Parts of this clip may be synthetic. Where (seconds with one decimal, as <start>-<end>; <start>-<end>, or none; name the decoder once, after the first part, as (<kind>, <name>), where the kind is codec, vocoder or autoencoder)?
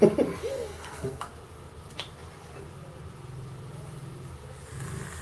0.5-1.3 (codec, SNAC)